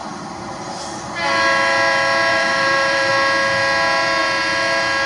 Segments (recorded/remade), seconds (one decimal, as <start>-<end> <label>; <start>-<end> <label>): 0.0-0.7 remade; 0.7-2.3 recorded; 2.3-3.1 remade; 3.1-5.1 recorded